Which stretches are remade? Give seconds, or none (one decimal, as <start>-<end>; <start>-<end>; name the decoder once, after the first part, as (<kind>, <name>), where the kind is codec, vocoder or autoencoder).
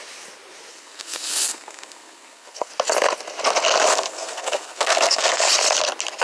0.7-2.7 (codec, SNAC); 3.9-5.5